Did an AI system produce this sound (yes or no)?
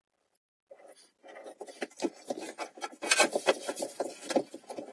no